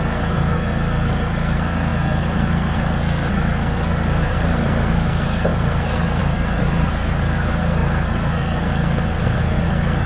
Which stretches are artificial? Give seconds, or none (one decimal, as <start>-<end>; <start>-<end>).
0.0-10.1